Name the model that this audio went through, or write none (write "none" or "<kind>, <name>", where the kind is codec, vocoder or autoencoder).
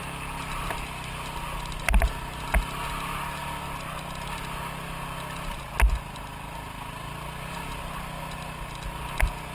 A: none